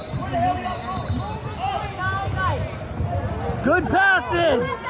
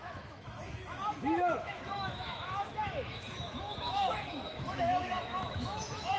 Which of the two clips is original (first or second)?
first